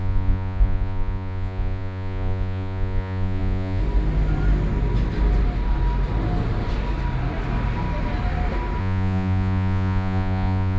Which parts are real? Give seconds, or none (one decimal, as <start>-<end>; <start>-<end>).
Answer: 3.8-8.8